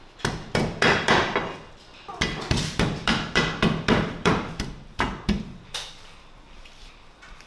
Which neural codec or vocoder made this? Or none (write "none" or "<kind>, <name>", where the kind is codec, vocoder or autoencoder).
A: vocoder, BigVGAN v2